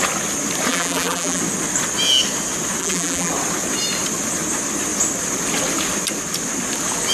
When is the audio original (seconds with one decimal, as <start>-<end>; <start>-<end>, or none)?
0.0-0.7; 1.4-2.8; 3.3-7.1